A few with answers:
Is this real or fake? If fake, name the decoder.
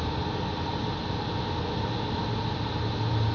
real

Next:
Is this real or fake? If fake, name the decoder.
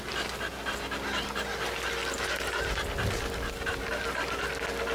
real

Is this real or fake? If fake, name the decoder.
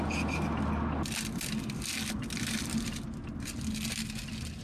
real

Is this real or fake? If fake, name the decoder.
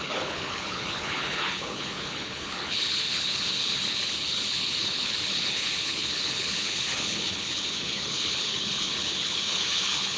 fake, codec, HILCodec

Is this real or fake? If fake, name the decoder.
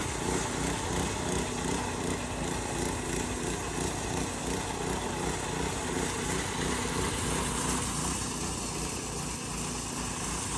real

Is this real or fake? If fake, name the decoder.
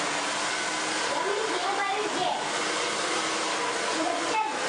real